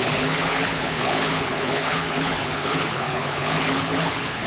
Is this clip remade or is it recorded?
remade